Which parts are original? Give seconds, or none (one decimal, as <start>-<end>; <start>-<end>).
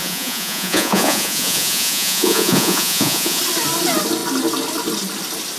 3.4-5.6